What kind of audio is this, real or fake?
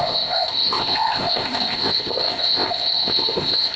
fake